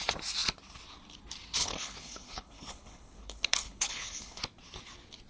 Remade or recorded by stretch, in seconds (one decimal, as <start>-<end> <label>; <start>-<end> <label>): 0.0-1.6 recorded; 1.6-4.4 remade; 4.4-5.3 recorded